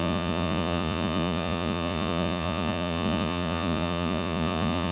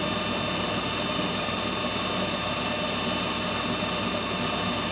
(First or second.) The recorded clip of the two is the second